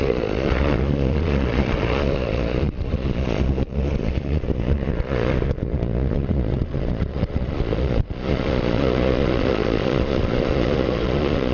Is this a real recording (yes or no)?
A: no